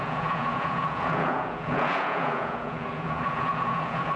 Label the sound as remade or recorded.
remade